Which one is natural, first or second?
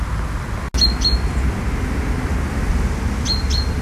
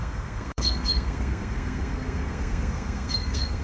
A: first